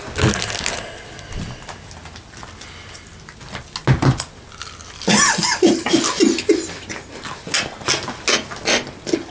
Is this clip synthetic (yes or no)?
no